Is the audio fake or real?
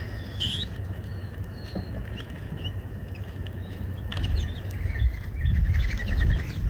fake